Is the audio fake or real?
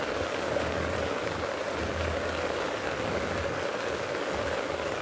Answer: fake